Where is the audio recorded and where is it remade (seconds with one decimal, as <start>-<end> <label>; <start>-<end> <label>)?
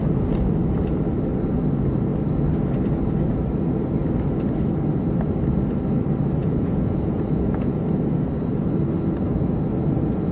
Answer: 0.0-6.4 recorded; 6.4-7.8 remade; 7.8-10.3 recorded